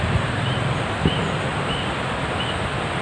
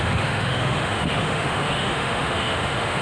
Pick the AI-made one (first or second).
second